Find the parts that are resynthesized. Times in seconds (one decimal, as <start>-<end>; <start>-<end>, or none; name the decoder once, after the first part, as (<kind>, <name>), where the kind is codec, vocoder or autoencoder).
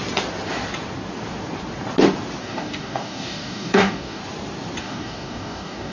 2.4-4.2 (codec, DAC); 4.8-5.9